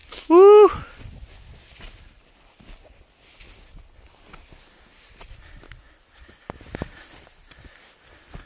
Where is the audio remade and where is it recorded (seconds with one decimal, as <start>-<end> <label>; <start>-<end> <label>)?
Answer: 0.0-8.5 recorded